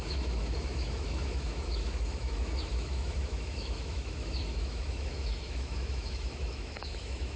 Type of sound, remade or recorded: remade